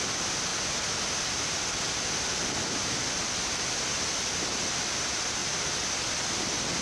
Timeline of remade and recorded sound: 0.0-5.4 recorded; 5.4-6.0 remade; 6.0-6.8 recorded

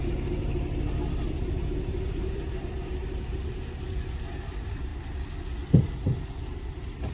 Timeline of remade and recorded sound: 0.0-4.9 remade; 4.9-5.7 recorded; 5.7-7.1 remade

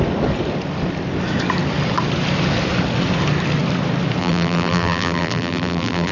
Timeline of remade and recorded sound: 0.0-4.2 recorded; 4.2-6.1 remade

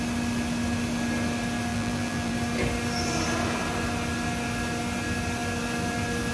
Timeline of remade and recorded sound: 0.0-1.7 recorded; 1.7-2.3 remade; 2.3-6.3 recorded